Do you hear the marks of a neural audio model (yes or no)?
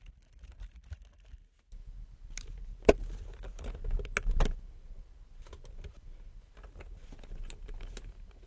no